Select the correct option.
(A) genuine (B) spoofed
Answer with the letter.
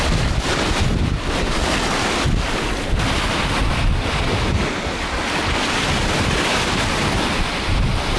A